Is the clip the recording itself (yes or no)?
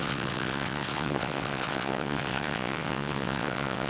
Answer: no